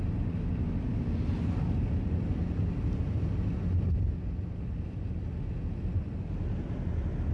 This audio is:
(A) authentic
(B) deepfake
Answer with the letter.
A